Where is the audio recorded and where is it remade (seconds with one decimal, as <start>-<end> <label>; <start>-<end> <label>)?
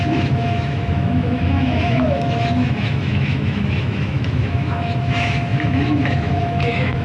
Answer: 0.0-7.0 remade